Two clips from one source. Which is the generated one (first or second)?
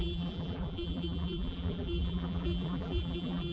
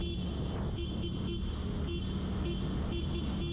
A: first